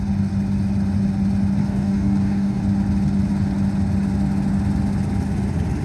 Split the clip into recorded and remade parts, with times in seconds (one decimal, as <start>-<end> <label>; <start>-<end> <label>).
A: 0.0-1.6 recorded; 1.6-2.6 remade; 2.6-5.8 recorded